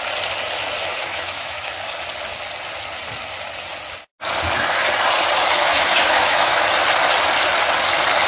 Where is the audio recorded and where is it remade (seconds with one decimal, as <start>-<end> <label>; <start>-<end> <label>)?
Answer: 0.0-0.9 recorded; 0.9-1.7 remade; 1.7-5.6 recorded; 5.6-6.6 remade; 6.6-8.3 recorded